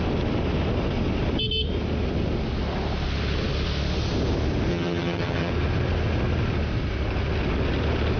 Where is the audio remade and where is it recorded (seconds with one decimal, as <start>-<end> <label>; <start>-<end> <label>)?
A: 0.0-4.7 recorded; 4.7-5.5 remade; 5.5-8.2 recorded